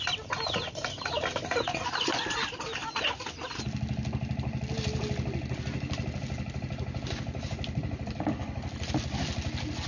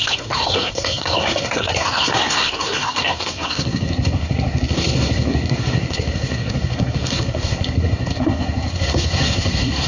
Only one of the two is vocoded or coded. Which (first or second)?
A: second